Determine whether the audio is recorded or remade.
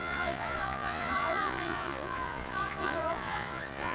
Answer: remade